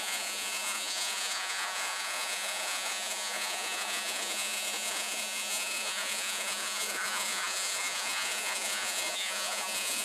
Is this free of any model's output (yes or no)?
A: no